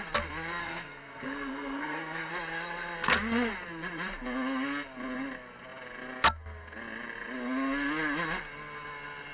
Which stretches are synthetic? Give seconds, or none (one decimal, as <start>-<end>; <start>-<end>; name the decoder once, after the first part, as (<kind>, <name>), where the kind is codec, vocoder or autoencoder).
0.6-2.3 (codec, SNAC)